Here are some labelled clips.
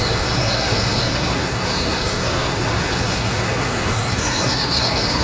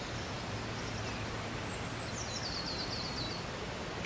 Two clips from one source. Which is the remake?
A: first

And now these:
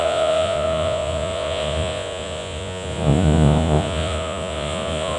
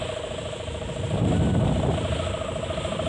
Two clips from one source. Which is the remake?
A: first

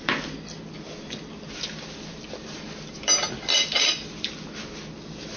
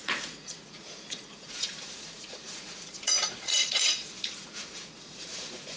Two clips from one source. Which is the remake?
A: second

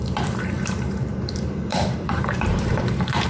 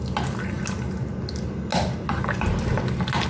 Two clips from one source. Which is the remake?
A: first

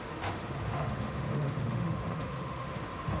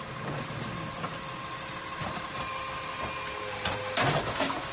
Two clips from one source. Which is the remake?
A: first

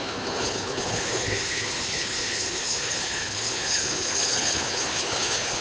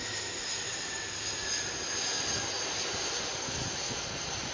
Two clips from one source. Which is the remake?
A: first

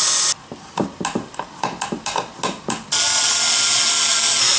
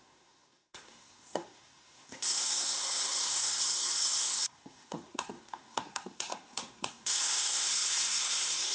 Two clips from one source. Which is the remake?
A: second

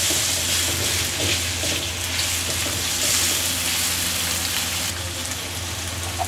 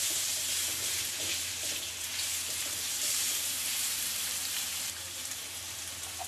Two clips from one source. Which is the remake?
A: second